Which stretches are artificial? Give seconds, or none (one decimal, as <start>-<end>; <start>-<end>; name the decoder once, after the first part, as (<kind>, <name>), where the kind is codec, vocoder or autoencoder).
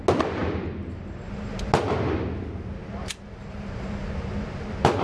none